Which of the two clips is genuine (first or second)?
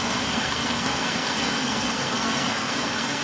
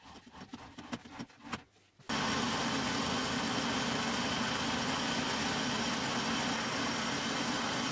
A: second